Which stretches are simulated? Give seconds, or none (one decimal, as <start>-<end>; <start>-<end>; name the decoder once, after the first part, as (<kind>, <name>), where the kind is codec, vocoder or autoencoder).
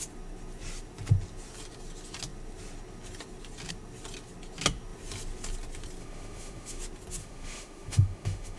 6.0-6.8 (autoencoder, DAC-VAE); 7.2-8.6